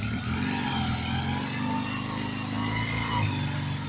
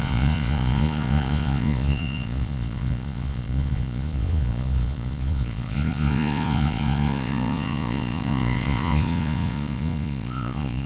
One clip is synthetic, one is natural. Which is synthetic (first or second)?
second